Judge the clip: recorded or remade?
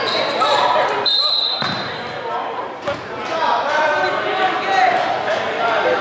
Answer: remade